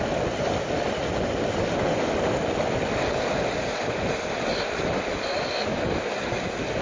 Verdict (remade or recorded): recorded